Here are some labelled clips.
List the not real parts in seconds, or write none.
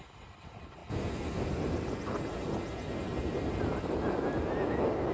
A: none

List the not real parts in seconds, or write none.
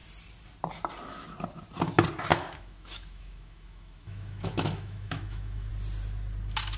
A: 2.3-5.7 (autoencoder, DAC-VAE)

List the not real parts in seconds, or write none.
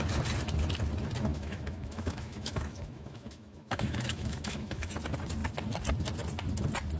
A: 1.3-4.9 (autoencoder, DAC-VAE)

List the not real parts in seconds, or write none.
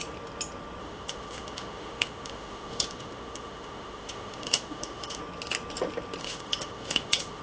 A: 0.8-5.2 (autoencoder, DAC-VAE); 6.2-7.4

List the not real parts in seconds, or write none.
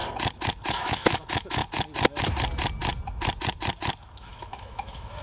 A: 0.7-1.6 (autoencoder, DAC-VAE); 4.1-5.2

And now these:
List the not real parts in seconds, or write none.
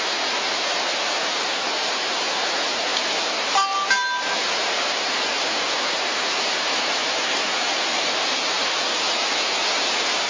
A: none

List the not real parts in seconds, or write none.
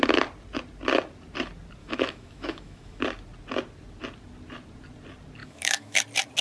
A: 1.8-3.0 (autoencoder, DAC-VAE); 5.4-6.0